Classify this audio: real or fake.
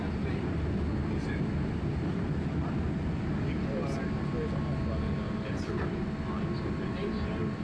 real